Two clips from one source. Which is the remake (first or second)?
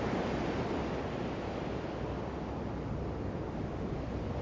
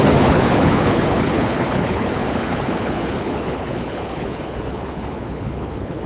second